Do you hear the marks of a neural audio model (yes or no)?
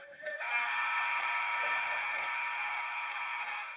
yes